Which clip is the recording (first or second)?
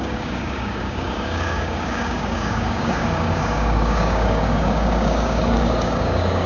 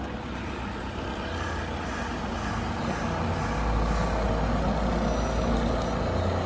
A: second